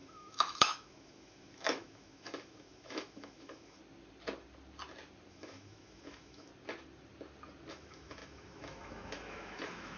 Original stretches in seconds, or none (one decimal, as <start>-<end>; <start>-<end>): 3.8-5.3; 6.5-7.7